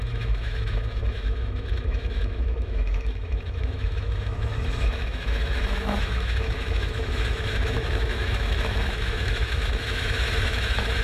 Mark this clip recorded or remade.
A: remade